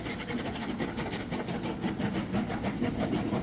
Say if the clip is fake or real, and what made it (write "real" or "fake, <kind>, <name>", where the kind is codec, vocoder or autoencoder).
real